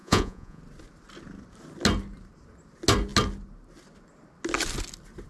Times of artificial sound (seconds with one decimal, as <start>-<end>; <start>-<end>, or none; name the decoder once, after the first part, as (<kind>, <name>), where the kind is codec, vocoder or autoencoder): 0.0-0.6 (vocoder, Vocos)